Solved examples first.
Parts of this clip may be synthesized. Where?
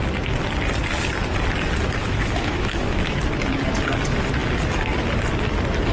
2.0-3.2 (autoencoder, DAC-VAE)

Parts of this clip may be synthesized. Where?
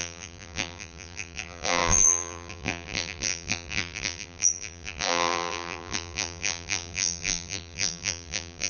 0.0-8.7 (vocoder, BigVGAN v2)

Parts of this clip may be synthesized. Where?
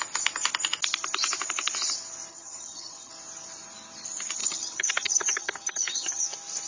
2.3-3.1 (vocoder, HiFi-GAN); 4.4-6.2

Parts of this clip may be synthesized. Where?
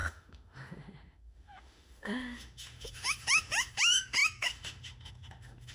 0.0-5.7 (autoencoder, DAC-VAE)